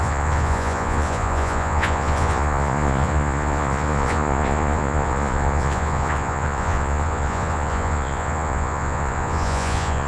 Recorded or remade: remade